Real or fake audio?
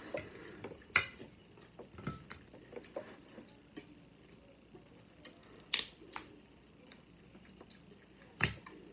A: real